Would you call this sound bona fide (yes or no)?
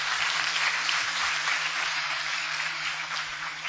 no